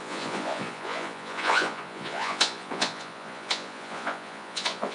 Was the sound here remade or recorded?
remade